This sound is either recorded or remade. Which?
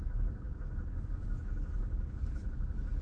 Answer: remade